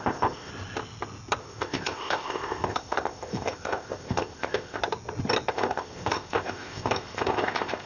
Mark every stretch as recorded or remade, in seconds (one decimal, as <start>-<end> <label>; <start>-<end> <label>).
0.0-0.5 remade; 0.5-1.4 recorded; 1.4-4.8 remade; 4.8-5.5 recorded; 5.5-7.9 remade